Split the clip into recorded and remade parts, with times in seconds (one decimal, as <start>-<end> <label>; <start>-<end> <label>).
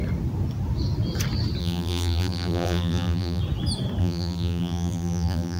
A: 0.0-1.6 recorded; 1.6-3.4 remade; 3.4-4.0 recorded; 4.0-5.6 remade